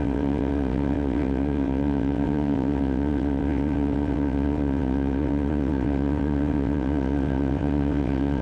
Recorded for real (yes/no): no